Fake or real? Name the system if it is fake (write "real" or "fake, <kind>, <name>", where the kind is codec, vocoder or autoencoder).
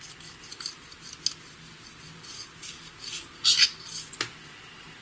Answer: real